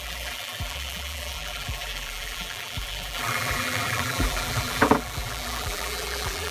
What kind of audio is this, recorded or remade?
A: remade